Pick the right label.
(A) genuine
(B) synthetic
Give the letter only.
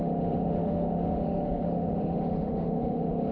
B